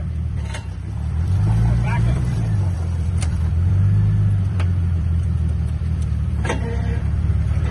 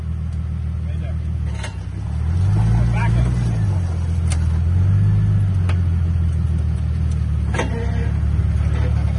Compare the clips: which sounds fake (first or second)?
first